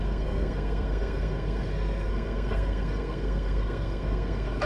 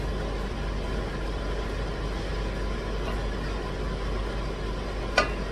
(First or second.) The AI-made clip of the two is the first